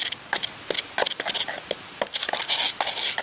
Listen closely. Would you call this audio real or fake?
real